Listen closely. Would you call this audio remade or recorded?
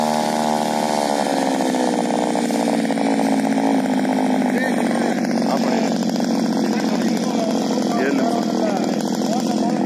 recorded